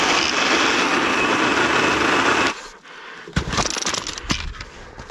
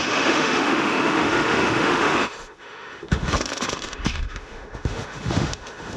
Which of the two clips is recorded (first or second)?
first